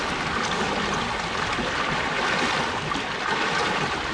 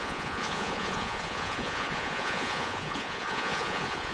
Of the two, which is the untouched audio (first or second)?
first